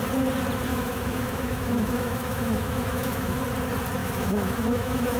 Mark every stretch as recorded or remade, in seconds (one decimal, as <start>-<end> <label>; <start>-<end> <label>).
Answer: 0.0-0.7 recorded; 0.7-3.4 remade; 3.4-4.0 recorded; 4.0-5.2 remade